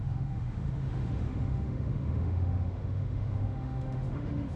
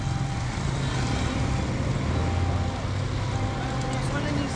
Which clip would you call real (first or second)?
second